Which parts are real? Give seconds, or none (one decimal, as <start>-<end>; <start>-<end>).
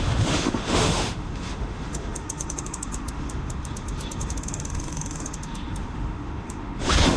none